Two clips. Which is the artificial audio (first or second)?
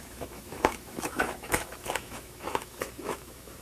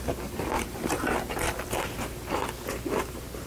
first